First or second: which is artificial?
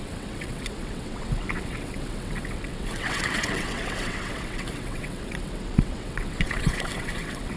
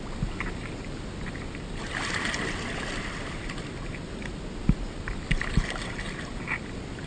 first